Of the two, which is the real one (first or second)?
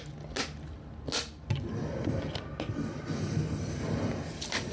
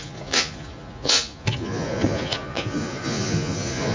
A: first